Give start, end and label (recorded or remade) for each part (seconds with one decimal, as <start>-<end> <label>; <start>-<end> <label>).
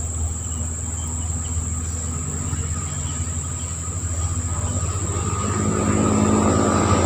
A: 0.0-7.1 recorded